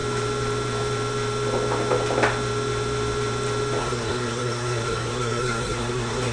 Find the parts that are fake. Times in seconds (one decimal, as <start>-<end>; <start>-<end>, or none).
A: 3.8-6.3